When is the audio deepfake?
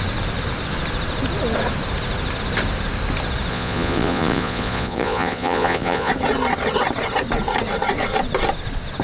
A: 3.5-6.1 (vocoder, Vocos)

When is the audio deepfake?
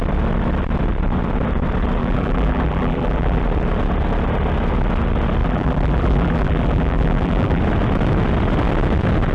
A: 2.0-3.4 (vocoder, BigVGAN v2); 5.4-7.6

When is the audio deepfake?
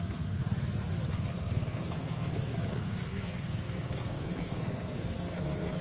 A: 0.0-0.4 (codec, SNAC); 1.1-5.8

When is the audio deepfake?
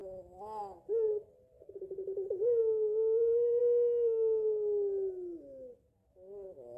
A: 2.6-3.6 (autoencoder, DAC-VAE)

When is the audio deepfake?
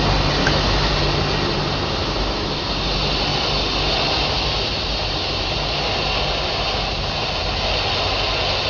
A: 0.4-0.9 (autoencoder, DAC-VAE); 2.0-2.6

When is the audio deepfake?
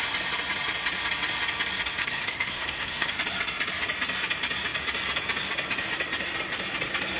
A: 2.0-3.1 (codec, SNAC)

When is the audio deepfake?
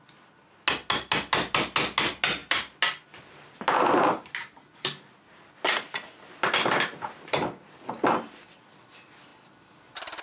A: none